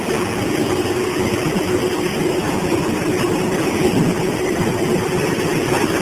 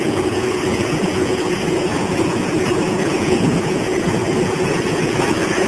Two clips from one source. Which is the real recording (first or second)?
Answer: first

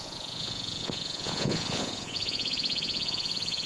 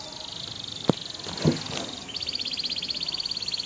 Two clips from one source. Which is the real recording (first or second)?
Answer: second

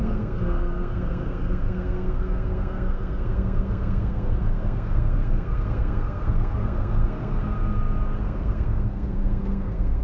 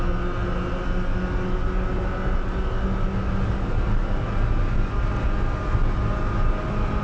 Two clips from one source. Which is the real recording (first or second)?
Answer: second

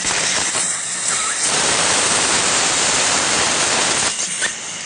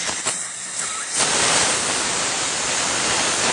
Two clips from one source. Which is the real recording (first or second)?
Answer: second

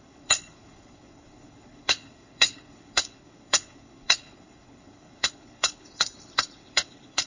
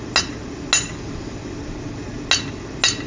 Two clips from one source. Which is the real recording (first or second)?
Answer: second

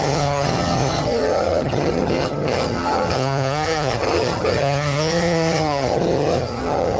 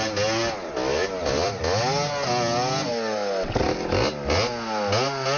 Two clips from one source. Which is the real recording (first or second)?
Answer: second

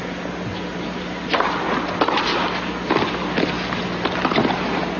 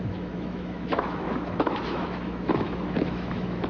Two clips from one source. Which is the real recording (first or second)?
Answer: first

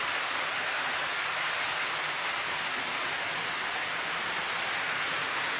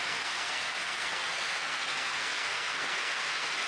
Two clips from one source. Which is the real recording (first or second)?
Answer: first